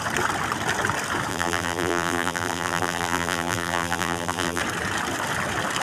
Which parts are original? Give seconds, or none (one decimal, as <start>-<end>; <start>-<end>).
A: 0.0-1.3; 4.6-5.8